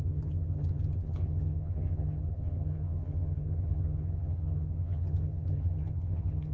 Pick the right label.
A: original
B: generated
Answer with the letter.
B